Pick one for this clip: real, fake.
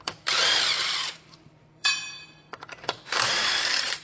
fake